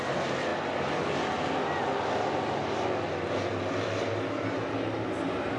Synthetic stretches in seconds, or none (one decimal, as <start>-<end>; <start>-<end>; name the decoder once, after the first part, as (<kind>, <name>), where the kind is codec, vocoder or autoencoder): none